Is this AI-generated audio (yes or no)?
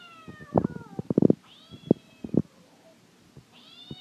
no